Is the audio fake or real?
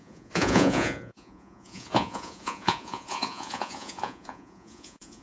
fake